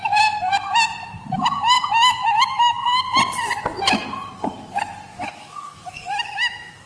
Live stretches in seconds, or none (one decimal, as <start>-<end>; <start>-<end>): 0.0-1.0; 3.0-5.1